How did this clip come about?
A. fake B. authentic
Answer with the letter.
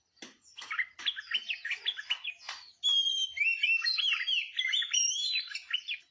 B